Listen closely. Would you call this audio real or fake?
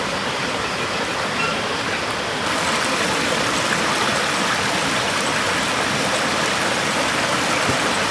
real